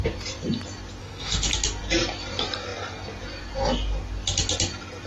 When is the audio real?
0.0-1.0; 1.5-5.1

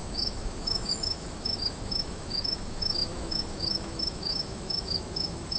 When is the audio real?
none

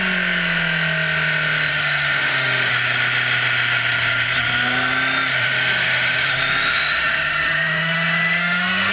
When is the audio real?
0.0-1.7; 2.7-5.3; 6.3-6.7

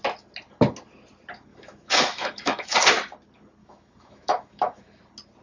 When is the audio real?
0.0-1.5; 2.7-3.6; 5.0-5.4